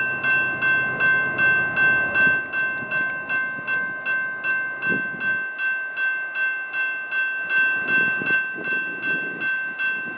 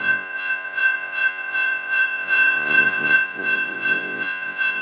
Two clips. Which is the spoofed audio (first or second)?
second